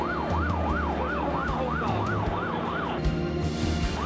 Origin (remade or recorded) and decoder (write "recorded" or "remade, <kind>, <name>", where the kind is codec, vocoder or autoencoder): recorded